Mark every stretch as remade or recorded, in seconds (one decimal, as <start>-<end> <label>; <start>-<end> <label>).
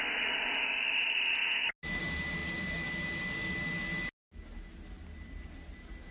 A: 0.0-6.1 recorded